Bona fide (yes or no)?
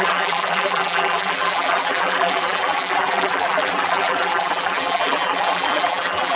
no